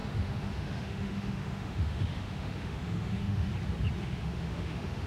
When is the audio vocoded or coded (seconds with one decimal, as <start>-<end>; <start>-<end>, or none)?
0.0-3.5; 4.0-5.1